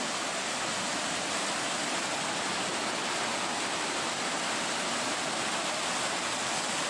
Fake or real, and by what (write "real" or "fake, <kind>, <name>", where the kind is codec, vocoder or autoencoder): real